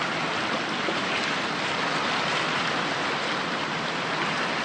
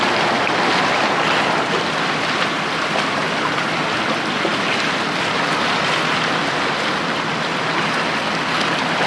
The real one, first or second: second